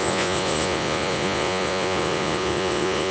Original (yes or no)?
no